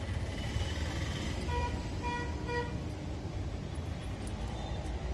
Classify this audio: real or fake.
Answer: real